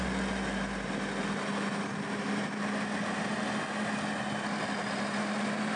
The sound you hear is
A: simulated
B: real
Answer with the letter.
B